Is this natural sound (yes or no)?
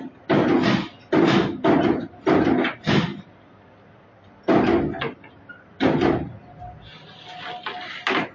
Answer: yes